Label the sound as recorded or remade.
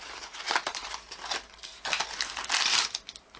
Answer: recorded